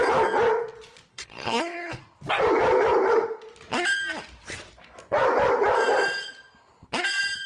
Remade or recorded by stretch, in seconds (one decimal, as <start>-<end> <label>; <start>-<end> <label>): 0.0-1.1 recorded; 1.1-2.0 remade; 2.0-7.5 recorded